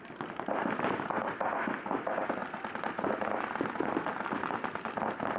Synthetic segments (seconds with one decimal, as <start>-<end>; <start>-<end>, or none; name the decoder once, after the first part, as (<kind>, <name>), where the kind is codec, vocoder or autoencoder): none